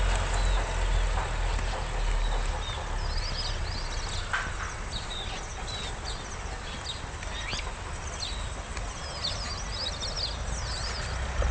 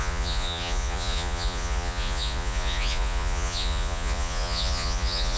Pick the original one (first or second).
first